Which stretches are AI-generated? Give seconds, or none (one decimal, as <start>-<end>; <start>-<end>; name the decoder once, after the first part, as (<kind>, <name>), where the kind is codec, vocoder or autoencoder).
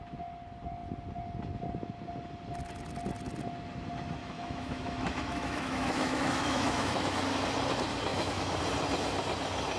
4.2-7.2 (autoencoder, DAC-VAE); 8.1-8.6